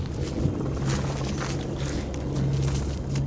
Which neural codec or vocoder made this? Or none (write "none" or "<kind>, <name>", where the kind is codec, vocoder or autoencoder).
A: none